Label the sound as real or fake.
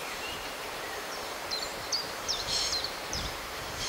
fake